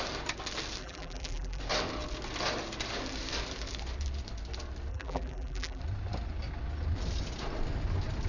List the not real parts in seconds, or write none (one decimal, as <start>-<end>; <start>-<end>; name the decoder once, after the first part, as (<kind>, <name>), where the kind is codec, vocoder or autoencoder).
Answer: 0.8-1.6 (vocoder, BigVGAN v2); 4.9-5.8